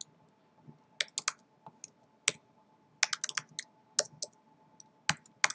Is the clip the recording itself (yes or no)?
yes